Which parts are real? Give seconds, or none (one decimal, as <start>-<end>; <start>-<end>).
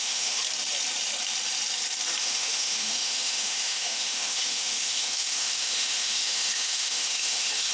0.4-2.2